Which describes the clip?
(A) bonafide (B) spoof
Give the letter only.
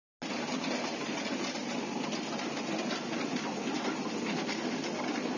A